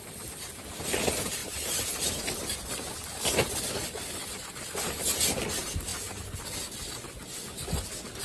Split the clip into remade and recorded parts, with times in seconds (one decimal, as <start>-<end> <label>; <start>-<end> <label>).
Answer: 0.0-8.2 recorded